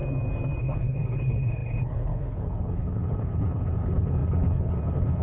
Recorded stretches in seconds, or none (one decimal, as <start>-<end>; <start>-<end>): 0.0-0.6

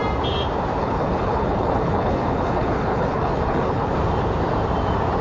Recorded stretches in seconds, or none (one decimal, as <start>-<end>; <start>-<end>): 0.0-0.8; 3.9-5.2

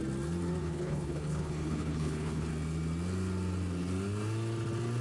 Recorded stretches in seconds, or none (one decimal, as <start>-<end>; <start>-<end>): 0.0-0.6; 2.5-5.0

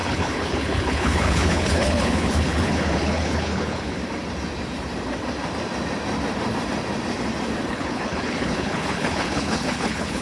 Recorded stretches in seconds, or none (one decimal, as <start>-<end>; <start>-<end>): 4.0-7.7